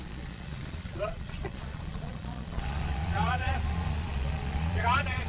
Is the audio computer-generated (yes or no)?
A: yes